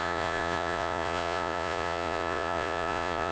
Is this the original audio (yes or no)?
no